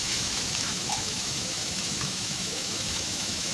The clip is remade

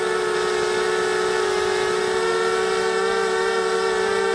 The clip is recorded